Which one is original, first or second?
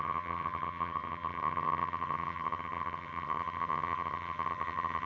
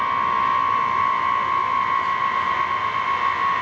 second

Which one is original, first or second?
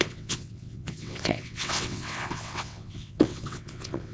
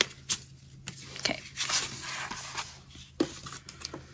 second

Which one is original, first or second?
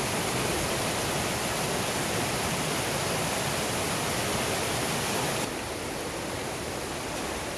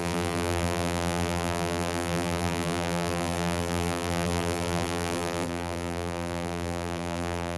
first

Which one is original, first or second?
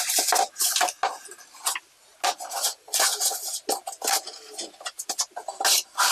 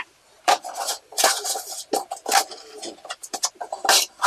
first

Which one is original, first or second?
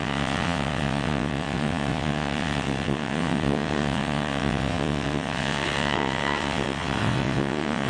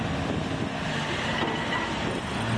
second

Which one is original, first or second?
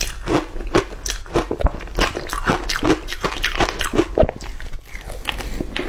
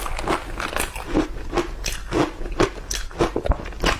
first